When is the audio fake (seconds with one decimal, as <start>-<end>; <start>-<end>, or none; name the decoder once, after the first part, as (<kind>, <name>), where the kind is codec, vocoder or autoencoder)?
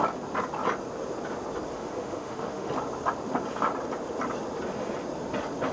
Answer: 1.7-2.7 (autoencoder, DAC-VAE)